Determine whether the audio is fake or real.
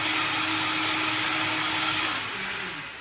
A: real